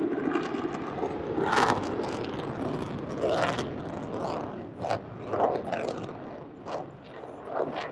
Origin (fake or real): real